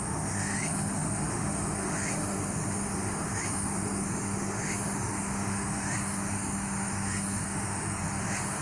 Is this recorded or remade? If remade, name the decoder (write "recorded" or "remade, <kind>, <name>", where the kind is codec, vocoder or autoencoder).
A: remade, autoencoder, DAC-VAE